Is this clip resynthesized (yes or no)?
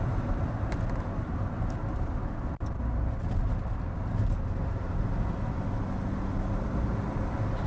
no